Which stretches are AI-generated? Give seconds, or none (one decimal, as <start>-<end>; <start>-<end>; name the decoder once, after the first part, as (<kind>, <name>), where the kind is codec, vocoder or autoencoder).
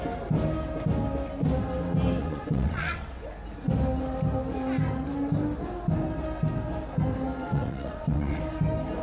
2.2-3.3 (vocoder, WaveNeXt); 7.5-8.4